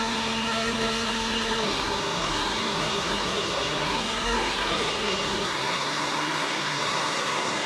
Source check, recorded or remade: remade